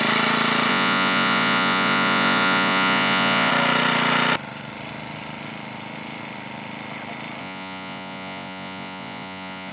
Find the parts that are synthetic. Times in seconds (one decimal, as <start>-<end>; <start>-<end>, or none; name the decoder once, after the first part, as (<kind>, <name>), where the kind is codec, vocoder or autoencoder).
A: 0.7-3.5 (vocoder, Vocos); 7.4-9.7